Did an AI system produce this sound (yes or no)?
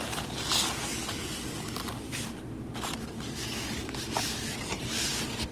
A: no